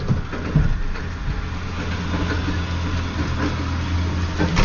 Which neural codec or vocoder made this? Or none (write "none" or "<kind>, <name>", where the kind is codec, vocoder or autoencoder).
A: none